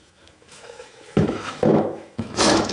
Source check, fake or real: fake